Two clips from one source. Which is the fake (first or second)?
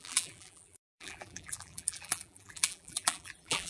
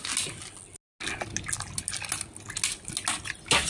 first